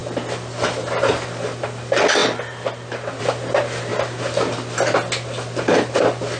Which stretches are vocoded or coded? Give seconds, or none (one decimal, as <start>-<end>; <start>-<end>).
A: none